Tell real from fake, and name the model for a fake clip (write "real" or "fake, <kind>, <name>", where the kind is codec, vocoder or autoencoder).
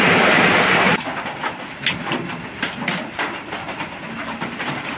real